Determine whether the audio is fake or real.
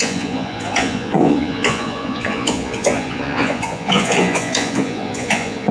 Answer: fake